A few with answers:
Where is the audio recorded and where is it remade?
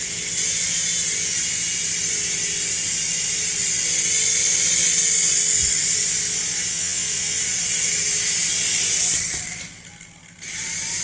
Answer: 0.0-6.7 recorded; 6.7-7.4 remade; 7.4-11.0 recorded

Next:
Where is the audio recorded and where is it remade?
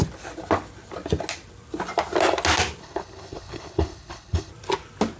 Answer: 0.0-2.8 recorded; 2.8-4.5 remade; 4.5-5.2 recorded